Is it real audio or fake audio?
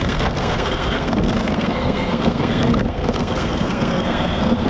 fake